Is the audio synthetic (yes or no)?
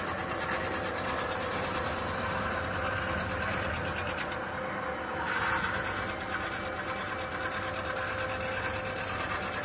no